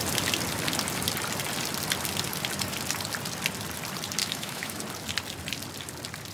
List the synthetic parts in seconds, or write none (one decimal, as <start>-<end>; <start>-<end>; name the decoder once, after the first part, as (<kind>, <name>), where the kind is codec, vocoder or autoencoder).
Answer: 4.2-4.8 (autoencoder, DAC-VAE)